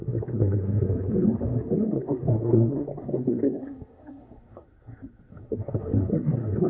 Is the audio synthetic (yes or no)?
yes